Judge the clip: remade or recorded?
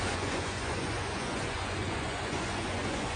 remade